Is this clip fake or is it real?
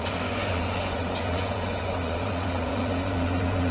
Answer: fake